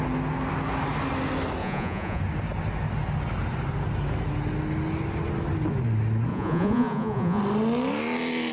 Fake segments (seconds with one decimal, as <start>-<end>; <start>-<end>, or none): 1.6-2.2; 6.3-7.4